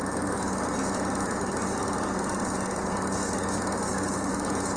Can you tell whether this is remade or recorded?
recorded